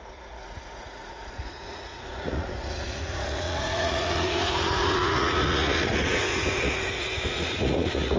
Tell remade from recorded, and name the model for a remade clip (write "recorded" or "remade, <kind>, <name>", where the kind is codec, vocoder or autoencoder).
remade, vocoder, Vocos